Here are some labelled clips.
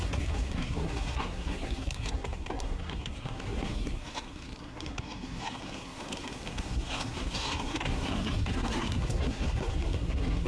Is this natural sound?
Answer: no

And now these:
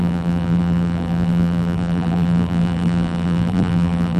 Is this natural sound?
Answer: no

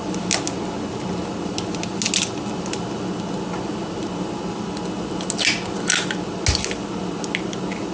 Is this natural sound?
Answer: yes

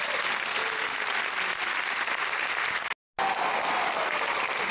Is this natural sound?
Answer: yes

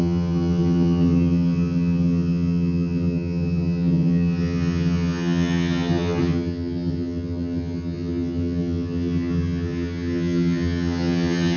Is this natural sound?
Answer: no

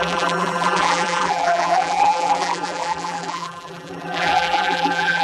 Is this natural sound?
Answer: no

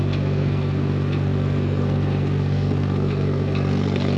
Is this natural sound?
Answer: no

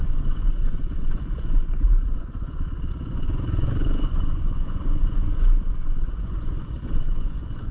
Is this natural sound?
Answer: no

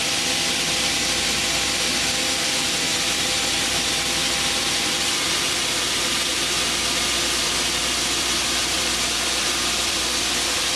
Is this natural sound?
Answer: no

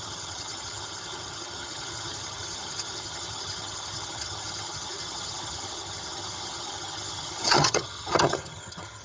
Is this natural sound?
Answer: no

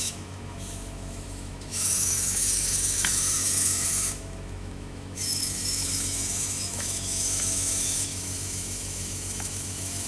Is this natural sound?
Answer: no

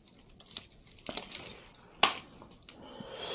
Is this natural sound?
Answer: yes